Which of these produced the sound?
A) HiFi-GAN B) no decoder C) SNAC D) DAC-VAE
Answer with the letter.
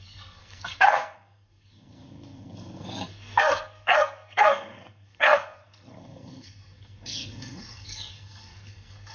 C